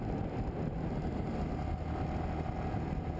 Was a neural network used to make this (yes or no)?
no